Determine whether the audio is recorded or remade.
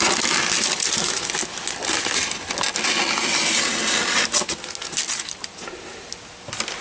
recorded